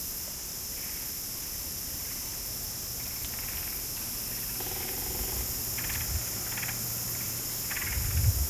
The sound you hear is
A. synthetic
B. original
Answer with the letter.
B